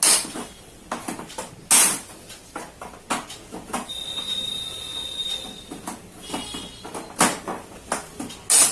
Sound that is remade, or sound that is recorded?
recorded